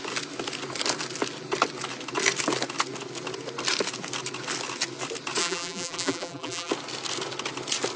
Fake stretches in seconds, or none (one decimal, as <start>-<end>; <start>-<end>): 5.4-6.7